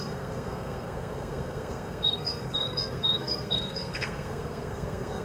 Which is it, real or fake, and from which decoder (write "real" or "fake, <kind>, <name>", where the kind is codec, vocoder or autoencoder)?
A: fake, codec, SNAC